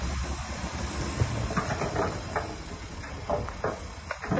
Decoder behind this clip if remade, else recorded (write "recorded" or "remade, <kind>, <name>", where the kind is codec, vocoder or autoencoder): recorded